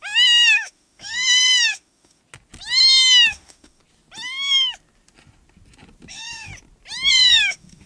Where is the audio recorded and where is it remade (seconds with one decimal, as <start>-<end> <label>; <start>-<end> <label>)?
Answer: 0.0-2.2 remade; 2.2-3.3 recorded; 3.3-3.8 remade; 3.8-6.1 recorded; 6.1-6.5 remade; 6.5-7.1 recorded; 7.1-7.9 remade